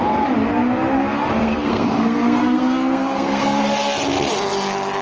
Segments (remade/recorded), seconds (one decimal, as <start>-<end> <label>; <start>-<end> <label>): 0.0-1.4 recorded; 1.4-3.6 remade; 3.6-5.0 recorded